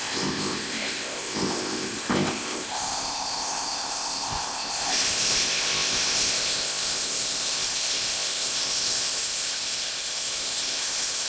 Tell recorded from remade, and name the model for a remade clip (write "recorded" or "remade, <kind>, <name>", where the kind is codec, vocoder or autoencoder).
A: remade, codec, ZipCodec